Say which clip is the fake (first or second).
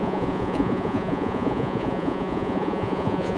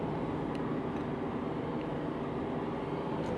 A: first